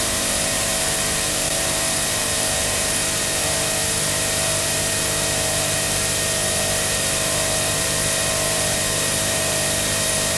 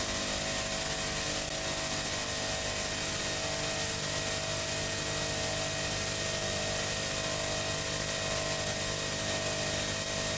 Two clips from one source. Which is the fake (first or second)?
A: first